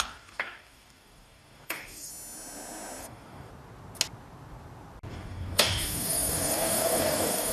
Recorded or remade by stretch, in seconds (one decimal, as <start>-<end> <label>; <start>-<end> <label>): 0.0-2.1 remade; 2.1-3.0 recorded; 3.0-3.5 remade; 3.5-5.1 recorded; 5.1-7.5 remade

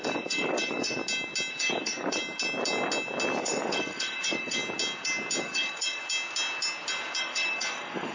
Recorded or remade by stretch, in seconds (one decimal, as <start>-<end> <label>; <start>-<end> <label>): 0.0-1.0 remade; 1.0-1.5 recorded; 1.5-2.2 remade; 2.2-3.4 recorded; 3.4-4.6 remade; 4.6-5.4 recorded; 5.4-6.0 remade; 6.0-7.2 recorded; 7.2-8.1 remade

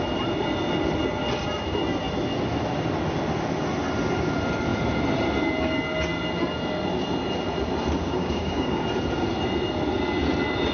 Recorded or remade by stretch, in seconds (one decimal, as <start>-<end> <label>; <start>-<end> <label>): 0.0-8.0 recorded; 8.0-8.8 remade; 8.8-10.7 recorded

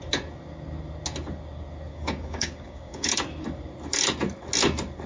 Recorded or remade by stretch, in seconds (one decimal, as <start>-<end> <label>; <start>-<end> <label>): 0.0-1.9 recorded; 1.9-3.1 remade; 3.1-5.1 recorded

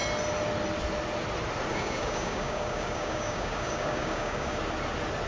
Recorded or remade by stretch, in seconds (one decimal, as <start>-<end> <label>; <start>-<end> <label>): 0.0-1.7 recorded; 1.7-4.6 remade; 4.6-5.3 recorded